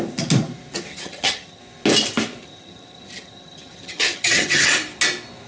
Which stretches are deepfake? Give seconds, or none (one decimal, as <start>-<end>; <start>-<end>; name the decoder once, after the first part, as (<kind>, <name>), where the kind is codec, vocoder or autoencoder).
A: 0.9-1.6 (vocoder, HiFi-GAN); 2.4-4.7

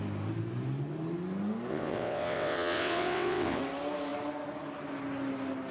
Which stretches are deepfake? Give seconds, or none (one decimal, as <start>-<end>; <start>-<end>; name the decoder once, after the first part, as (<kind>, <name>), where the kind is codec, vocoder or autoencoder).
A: 1.7-3.6 (vocoder, WaveNeXt)

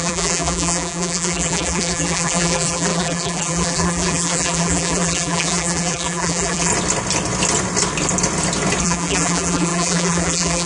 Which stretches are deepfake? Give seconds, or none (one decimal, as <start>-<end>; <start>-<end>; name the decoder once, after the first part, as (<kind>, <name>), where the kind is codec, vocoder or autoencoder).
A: 0.0-6.7 (vocoder, BigVGAN v2); 8.8-10.7

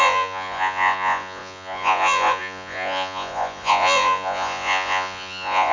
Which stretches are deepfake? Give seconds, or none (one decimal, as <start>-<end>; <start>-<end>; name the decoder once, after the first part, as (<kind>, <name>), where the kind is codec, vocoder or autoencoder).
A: 0.0-5.7 (vocoder, Vocos)

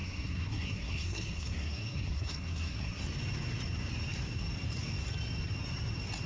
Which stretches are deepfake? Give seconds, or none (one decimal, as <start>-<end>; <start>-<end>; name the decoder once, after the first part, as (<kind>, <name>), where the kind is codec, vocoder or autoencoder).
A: 0.0-3.0 (codec, SNAC)

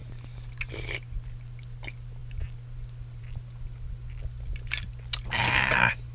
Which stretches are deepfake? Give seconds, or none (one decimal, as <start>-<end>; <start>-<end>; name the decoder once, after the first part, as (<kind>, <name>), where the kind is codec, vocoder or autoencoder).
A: none

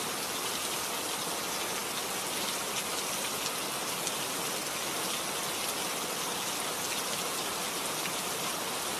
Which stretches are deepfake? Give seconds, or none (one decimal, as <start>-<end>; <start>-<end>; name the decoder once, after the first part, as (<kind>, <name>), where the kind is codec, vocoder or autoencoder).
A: none